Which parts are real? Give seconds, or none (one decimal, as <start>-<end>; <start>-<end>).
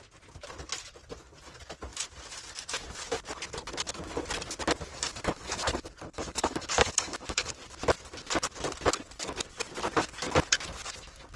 0.0-4.9; 7.5-11.4